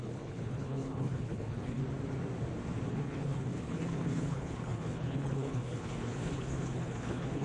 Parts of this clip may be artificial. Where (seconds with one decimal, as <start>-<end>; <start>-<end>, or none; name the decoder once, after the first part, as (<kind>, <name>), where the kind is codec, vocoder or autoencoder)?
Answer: 0.0-1.8 (codec, HILCodec); 2.9-7.4